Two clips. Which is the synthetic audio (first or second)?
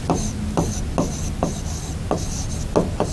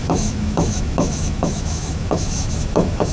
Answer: second